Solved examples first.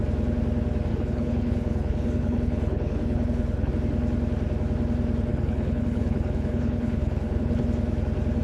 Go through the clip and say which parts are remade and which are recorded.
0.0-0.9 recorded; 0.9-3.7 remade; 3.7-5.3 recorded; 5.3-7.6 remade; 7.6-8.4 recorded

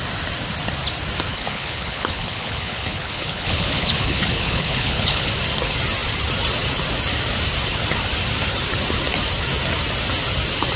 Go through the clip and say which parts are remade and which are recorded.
0.0-1.3 recorded; 1.3-5.3 remade; 5.3-10.8 recorded

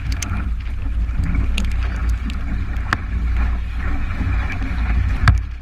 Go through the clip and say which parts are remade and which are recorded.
0.0-5.6 recorded